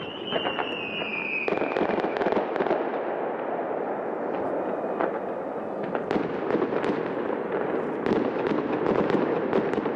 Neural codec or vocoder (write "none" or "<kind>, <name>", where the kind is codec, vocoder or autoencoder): none